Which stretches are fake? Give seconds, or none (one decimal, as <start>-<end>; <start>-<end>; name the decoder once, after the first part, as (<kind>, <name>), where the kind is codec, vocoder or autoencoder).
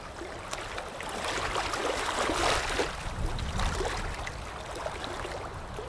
none